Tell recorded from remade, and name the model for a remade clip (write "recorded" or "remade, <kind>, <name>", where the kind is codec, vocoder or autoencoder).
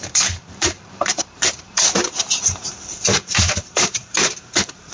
remade, vocoder, BigVGAN v2